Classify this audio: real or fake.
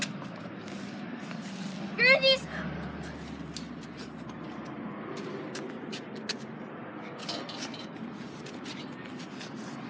real